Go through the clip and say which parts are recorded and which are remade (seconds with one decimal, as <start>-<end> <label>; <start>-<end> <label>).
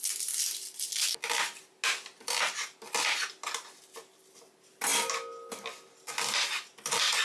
0.0-7.2 recorded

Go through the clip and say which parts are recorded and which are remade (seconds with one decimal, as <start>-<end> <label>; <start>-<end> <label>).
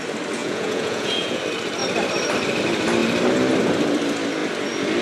0.0-0.4 recorded; 0.4-1.4 remade; 1.4-5.0 recorded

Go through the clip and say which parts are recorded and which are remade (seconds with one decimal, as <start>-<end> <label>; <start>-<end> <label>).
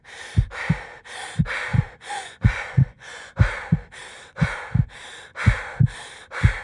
0.0-1.7 recorded; 1.7-3.3 remade; 3.3-6.6 recorded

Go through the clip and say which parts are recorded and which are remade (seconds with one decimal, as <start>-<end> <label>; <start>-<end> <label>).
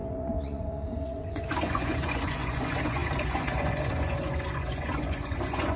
0.0-5.8 remade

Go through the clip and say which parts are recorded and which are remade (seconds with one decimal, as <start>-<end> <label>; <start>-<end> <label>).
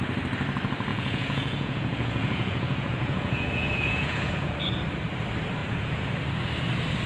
0.0-0.9 recorded; 0.9-4.5 remade; 4.5-5.6 recorded; 5.6-6.1 remade; 6.1-7.1 recorded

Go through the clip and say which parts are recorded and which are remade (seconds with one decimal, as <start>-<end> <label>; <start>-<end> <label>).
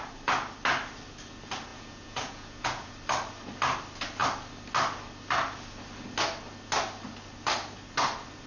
0.0-1.7 recorded; 1.7-2.9 remade; 2.9-8.5 recorded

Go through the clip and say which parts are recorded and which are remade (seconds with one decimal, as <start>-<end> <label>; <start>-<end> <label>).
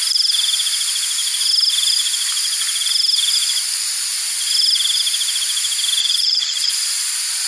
0.0-6.0 recorded; 6.0-6.7 remade; 6.7-7.5 recorded